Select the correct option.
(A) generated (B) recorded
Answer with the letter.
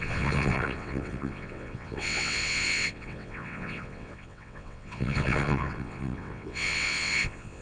A